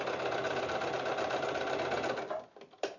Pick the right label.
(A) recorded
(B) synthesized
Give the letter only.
A